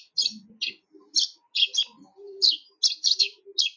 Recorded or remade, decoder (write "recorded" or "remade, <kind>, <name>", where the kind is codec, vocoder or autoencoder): recorded